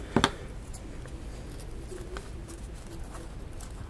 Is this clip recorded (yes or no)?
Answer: yes